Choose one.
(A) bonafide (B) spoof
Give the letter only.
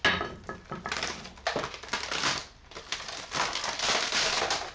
A